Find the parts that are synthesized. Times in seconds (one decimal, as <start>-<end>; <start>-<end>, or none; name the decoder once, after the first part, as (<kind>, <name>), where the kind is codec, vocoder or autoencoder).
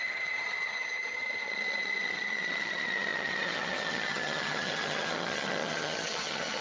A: 0.0-6.6 (vocoder, HiFi-GAN)